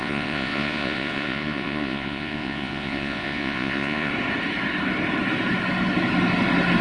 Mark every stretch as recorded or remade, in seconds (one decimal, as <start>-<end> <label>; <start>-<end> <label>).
0.0-4.1 remade; 4.1-6.8 recorded